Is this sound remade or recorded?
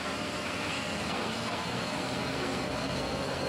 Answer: remade